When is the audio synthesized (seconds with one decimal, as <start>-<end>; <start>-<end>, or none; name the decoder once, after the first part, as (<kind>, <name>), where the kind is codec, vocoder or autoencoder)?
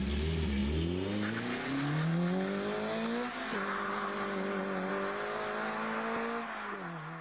none